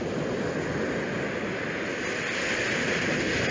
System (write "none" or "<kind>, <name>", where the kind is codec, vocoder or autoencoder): none